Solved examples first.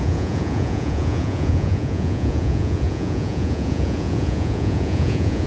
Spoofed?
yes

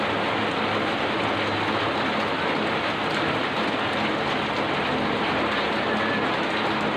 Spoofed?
no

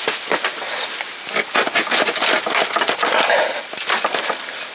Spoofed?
no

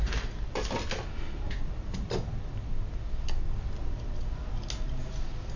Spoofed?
no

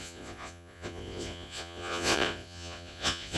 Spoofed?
yes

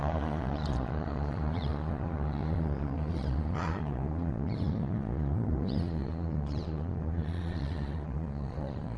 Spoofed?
yes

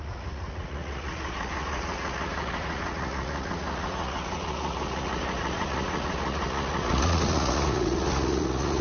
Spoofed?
yes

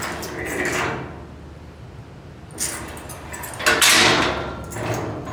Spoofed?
no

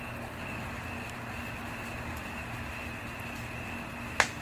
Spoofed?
no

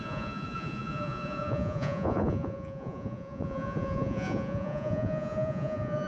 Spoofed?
yes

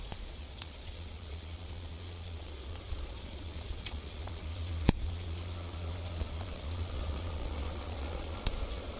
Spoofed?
yes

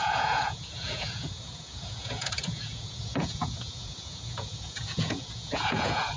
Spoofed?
yes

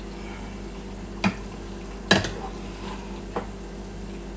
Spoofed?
no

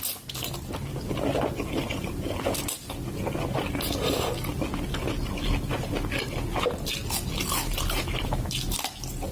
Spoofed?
no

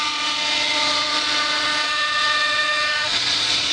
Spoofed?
yes